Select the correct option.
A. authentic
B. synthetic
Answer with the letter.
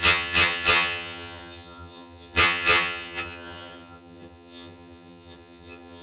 B